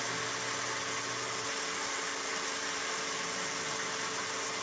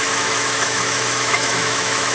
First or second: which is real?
first